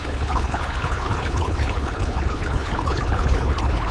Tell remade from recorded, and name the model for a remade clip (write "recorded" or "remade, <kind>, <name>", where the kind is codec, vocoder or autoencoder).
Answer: remade, codec, HILCodec